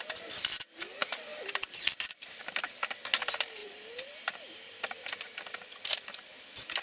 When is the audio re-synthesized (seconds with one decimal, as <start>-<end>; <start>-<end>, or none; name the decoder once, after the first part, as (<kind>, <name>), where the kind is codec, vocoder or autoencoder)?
1.3-2.1 (vocoder, BigVGAN v2); 3.6-6.0